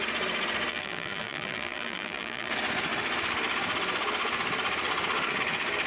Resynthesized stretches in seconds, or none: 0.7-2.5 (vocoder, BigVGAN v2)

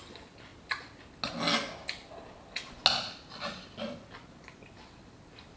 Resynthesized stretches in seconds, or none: none

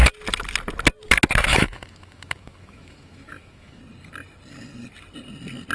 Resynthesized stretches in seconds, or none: 1.5-3.8 (autoencoder, DAC-VAE)

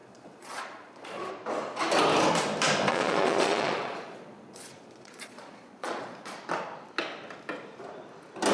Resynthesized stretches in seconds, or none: 0.0-1.3 (vocoder, Vocos); 2.9-6.4

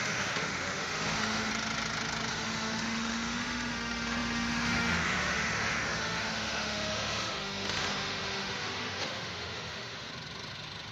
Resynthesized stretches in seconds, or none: 0.0-1.5 (autoencoder, DAC-VAE); 2.3-10.1

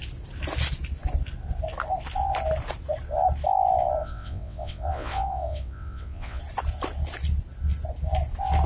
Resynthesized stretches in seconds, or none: 4.0-6.4 (vocoder, WaveNeXt)

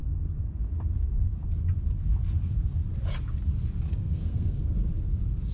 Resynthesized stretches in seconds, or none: 3.9-4.7 (codec, SNAC)

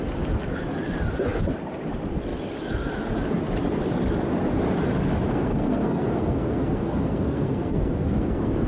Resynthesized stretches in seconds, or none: 5.3-8.7 (codec, SNAC)